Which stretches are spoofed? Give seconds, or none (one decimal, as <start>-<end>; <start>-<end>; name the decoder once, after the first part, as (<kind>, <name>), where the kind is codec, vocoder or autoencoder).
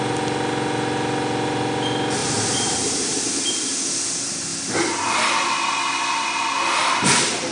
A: 2.2-3.8 (vocoder, BigVGAN v2)